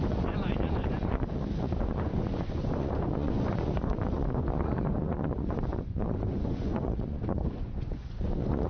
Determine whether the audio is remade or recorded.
remade